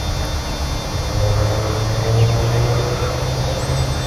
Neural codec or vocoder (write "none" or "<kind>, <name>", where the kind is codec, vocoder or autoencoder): none